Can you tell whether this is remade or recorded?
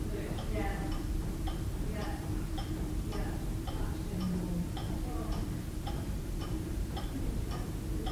remade